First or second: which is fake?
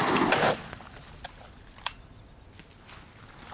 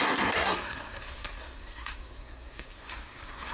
second